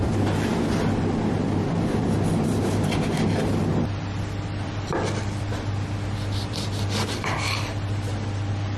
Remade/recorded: remade